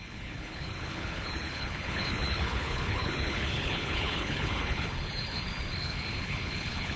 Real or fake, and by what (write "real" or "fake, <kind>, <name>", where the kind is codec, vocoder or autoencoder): fake, codec, HILCodec